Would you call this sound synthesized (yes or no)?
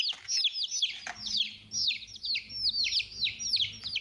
no